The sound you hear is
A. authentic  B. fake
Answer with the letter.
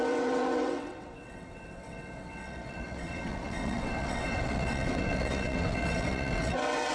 B